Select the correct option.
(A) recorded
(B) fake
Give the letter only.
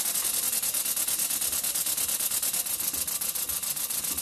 A